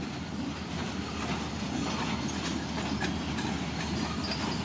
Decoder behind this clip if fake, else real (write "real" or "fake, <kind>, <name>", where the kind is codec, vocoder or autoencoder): real